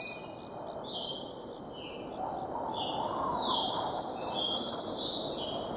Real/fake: real